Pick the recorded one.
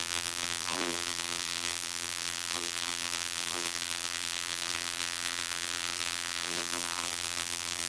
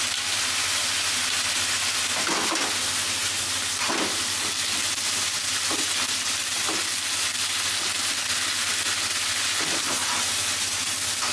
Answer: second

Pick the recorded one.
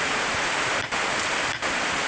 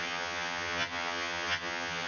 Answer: first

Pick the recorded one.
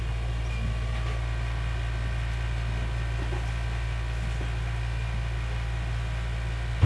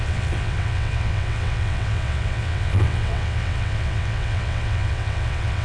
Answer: first